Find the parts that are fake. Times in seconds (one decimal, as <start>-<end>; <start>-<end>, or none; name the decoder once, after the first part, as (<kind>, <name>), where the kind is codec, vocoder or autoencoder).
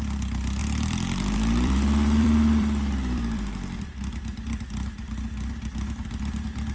0.6-4.6 (vocoder, BigVGAN v2)